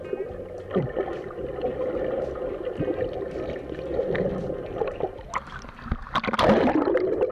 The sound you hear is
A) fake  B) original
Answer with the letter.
B